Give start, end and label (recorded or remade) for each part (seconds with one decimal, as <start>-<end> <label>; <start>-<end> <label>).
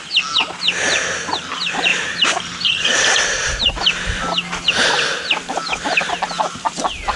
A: 0.0-1.9 recorded; 1.9-4.2 remade; 4.2-7.2 recorded